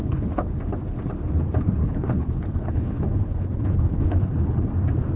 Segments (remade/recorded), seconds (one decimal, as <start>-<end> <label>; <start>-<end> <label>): 0.0-0.6 remade; 0.6-1.8 recorded; 1.8-4.7 remade; 4.7-5.2 recorded